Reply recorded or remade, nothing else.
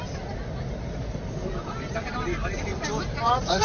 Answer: recorded